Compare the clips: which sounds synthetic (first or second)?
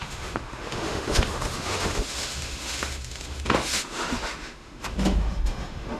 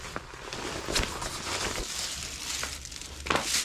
first